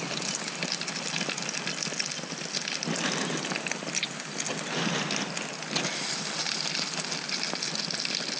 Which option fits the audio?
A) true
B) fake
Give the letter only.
A